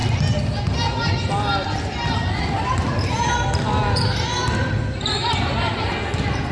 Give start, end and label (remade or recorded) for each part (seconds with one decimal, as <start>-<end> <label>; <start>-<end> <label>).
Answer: 0.0-5.2 recorded; 5.2-5.9 remade; 5.9-6.5 recorded